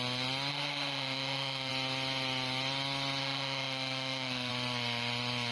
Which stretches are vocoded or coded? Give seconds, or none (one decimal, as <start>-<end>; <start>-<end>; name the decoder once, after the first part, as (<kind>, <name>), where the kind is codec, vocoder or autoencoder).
0.5-1.7 (autoencoder, DAC-VAE); 3.2-4.5